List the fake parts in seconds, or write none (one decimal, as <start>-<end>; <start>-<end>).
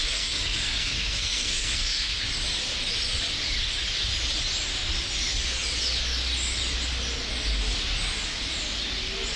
0.0-2.2